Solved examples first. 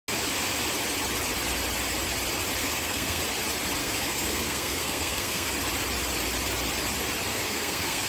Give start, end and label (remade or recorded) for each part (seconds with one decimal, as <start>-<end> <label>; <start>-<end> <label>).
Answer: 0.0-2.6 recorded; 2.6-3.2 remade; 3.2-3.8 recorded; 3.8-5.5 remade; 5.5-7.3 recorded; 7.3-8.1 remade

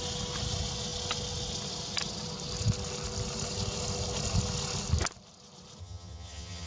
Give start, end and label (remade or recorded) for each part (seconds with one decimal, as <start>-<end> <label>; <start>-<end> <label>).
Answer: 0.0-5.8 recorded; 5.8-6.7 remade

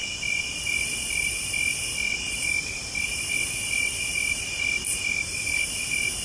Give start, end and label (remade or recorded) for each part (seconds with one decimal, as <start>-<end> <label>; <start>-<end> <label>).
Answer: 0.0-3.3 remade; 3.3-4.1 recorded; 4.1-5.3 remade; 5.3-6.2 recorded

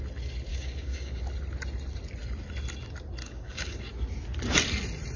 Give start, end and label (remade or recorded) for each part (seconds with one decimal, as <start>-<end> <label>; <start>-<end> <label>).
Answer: 0.0-0.5 recorded; 0.5-1.2 remade; 1.2-3.2 recorded; 3.2-3.8 remade; 3.8-5.2 recorded